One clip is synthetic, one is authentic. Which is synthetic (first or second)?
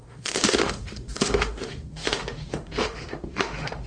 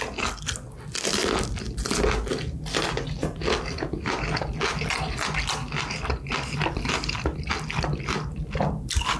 first